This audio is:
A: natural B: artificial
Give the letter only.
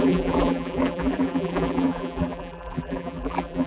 B